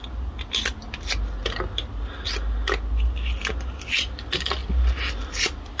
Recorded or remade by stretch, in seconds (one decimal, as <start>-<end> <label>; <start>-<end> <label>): 0.0-5.8 recorded